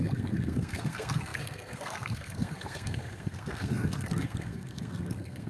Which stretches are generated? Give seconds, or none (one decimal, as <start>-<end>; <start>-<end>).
0.0-5.5